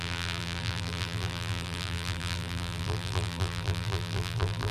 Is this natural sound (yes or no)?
no